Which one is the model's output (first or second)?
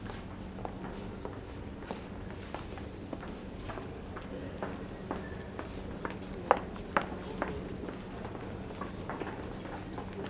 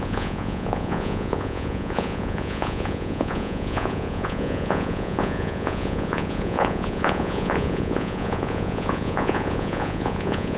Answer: second